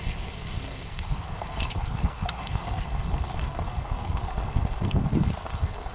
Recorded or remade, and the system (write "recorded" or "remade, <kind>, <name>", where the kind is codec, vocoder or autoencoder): remade, codec, SNAC